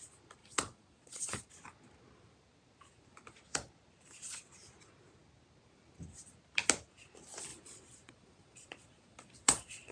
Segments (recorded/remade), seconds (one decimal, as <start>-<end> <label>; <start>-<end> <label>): 0.0-0.4 recorded; 0.4-1.5 remade; 1.5-7.5 recorded; 7.5-9.9 remade

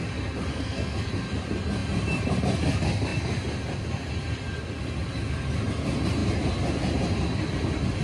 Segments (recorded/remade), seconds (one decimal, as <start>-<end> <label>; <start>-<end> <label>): 0.0-0.5 recorded; 0.5-1.1 remade; 1.1-8.0 recorded